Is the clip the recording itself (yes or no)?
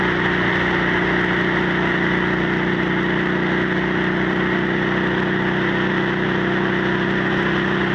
yes